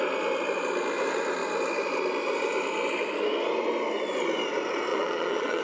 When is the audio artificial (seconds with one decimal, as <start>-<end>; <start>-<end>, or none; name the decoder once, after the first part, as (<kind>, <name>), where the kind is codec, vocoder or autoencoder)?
4.9-5.6 (vocoder, Vocos)